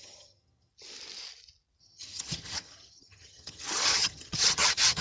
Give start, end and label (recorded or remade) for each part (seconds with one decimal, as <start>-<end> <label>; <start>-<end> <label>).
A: 0.0-0.7 remade; 0.7-1.8 recorded; 1.8-5.0 remade